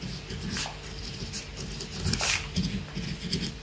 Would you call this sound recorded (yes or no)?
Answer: yes